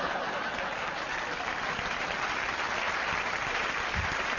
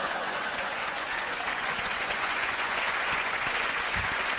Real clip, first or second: first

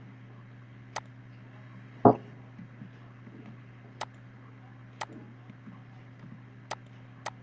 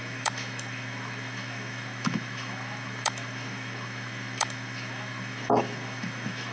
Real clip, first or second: first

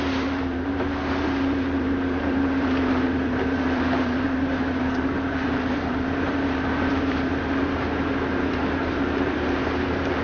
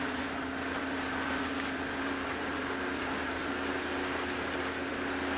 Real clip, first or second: second